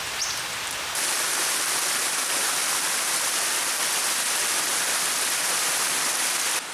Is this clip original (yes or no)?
yes